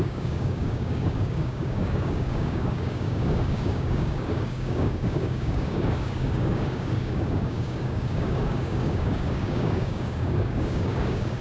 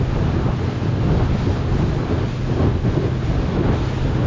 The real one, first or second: second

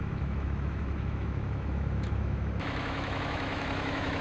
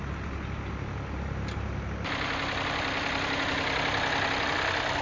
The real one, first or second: second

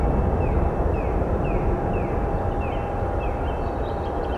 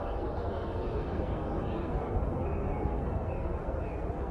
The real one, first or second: first